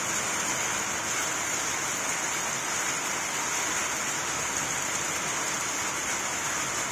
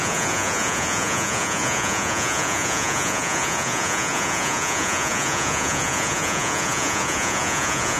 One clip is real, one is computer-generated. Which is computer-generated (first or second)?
second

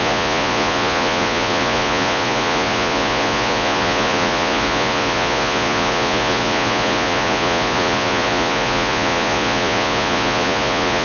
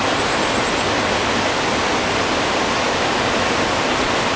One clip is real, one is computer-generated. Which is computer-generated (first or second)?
first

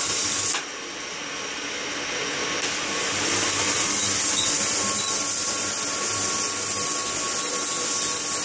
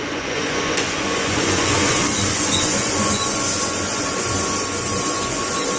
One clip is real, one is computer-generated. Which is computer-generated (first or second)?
second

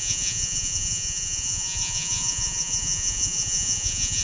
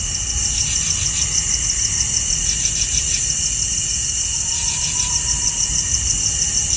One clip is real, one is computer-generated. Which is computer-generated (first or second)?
first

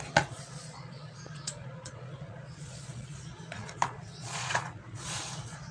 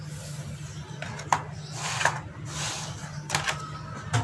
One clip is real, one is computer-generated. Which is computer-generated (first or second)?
first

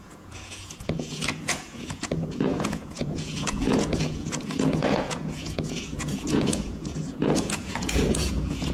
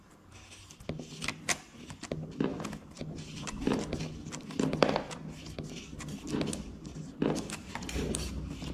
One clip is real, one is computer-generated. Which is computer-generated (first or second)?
first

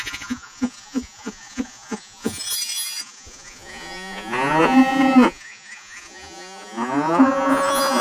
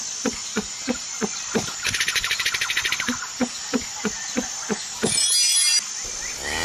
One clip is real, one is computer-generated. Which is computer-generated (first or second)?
first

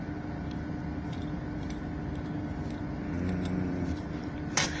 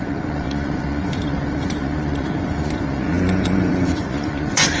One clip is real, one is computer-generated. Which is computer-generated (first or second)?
second